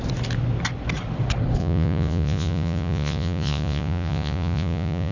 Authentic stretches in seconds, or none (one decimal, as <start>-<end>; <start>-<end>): 0.0-1.6